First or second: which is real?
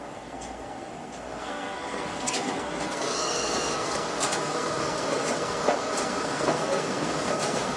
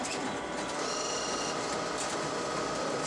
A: second